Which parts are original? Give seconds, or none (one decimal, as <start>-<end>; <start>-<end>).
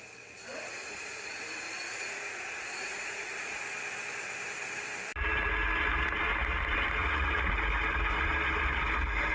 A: 0.0-0.5; 3.6-7.0; 7.5-9.3